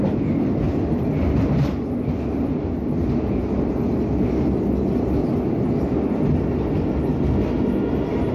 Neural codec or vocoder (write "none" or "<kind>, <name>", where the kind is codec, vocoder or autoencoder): none